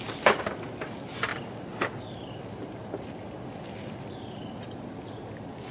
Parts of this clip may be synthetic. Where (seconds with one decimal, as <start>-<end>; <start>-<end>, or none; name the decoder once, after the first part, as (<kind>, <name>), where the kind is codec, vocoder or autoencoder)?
none